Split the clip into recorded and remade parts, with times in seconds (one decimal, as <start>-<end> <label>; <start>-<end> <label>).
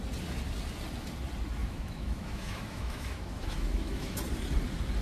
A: 0.0-1.6 recorded; 1.6-4.2 remade; 4.2-5.0 recorded